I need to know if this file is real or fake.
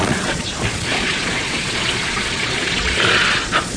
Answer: fake